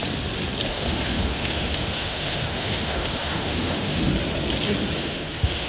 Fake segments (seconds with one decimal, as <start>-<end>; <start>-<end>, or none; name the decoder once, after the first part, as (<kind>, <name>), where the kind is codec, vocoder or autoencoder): 0.7-4.1 (autoencoder, DAC-VAE); 5.0-5.7